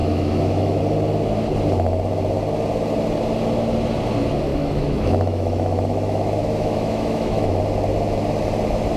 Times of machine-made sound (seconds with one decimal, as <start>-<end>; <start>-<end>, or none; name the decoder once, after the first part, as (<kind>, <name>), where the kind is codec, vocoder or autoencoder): 0.0-0.8 (autoencoder, DAC-VAE); 4.5-7.6